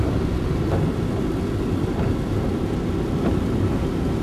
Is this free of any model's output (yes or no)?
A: yes